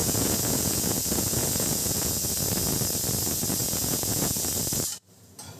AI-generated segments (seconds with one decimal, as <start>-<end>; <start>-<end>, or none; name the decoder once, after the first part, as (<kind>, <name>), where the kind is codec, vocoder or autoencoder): 0.0-2.1 (vocoder, Vocos); 3.6-4.5